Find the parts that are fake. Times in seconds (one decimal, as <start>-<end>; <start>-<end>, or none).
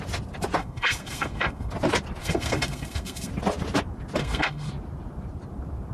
0.6-1.7; 2.2-3.3; 4.2-4.7